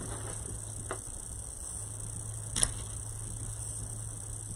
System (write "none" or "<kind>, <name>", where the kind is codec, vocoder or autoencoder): none